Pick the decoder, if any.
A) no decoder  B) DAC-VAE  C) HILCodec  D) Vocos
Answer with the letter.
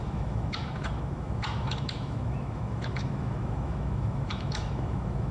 B